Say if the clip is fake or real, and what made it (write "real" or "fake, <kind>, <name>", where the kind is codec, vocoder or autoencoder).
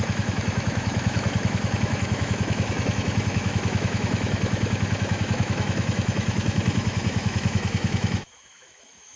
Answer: fake, autoencoder, DAC-VAE